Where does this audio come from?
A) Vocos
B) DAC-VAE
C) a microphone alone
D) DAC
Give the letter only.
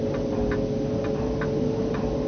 C